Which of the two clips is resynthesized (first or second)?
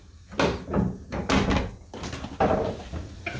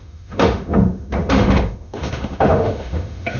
second